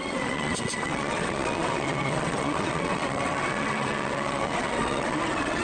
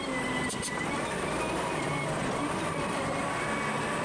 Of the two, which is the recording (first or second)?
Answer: second